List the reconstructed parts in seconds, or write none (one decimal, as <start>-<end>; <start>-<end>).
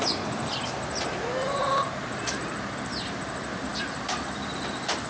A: none